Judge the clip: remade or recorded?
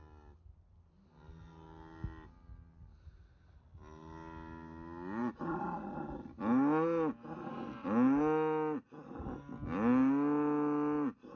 recorded